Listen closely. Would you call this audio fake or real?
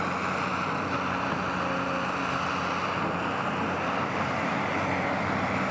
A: real